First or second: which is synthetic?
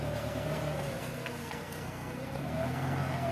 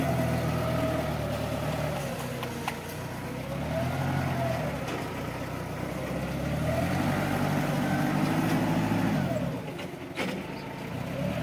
first